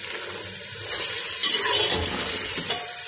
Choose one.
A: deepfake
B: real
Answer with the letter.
B